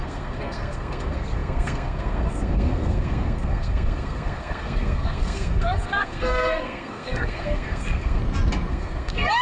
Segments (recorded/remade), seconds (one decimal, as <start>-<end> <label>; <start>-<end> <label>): 0.0-8.2 remade; 8.2-8.7 recorded; 8.7-9.4 remade